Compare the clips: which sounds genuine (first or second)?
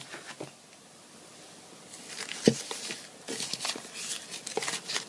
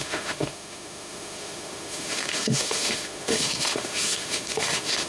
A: first